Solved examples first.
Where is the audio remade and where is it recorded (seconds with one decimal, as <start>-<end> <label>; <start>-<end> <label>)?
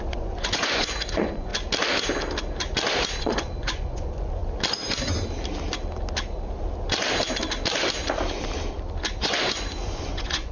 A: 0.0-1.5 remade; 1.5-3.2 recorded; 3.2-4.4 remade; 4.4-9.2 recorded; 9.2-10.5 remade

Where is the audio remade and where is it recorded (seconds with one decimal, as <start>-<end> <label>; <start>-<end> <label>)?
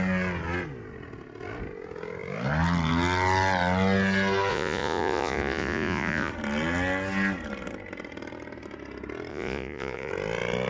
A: 0.0-4.5 recorded; 4.5-6.3 remade; 6.3-9.3 recorded; 9.3-10.1 remade; 10.1-10.7 recorded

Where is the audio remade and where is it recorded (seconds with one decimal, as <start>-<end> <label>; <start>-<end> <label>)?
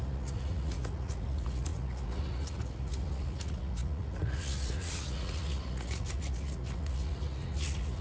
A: 0.0-8.0 remade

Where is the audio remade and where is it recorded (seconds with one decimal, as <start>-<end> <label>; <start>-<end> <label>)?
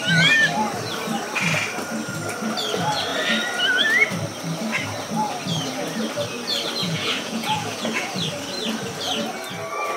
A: 0.0-6.8 recorded; 6.8-8.1 remade; 8.1-10.0 recorded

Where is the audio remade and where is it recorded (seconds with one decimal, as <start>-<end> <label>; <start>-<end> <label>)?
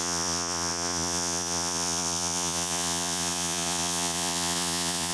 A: 0.0-5.1 remade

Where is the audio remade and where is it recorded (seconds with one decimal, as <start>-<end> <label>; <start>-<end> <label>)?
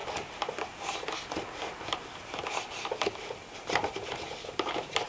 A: 0.0-5.1 recorded